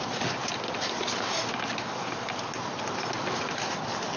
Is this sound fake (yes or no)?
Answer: no